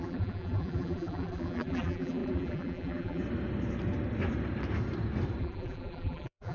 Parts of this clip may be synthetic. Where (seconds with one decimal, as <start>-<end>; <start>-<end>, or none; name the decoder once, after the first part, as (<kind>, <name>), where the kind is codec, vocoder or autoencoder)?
0.0-3.2 (vocoder, BigVGAN v2); 5.4-6.5